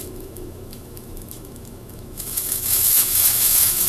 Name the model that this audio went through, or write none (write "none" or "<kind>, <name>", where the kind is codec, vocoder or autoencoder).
autoencoder, DAC-VAE